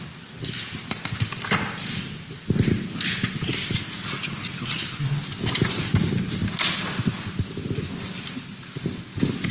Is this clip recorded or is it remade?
recorded